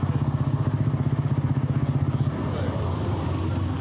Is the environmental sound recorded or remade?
recorded